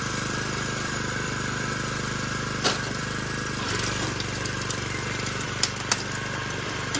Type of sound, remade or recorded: remade